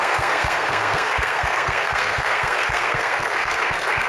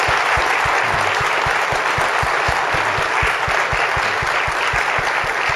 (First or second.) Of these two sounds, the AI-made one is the first